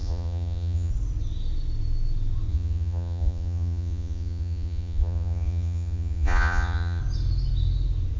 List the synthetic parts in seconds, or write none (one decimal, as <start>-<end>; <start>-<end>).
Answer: 0.0-0.9; 2.5-7.0